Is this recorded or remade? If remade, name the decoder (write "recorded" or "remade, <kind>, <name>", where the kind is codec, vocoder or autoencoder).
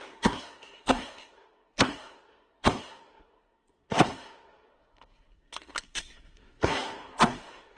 remade, codec, SNAC